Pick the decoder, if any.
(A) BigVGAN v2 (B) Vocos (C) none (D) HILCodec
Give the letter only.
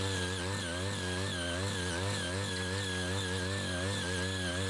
C